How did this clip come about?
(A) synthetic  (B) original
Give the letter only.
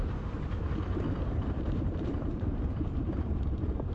A